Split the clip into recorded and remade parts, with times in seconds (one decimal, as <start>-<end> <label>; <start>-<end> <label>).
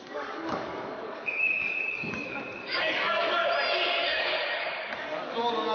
0.0-3.4 remade; 3.4-4.0 recorded; 4.0-5.7 remade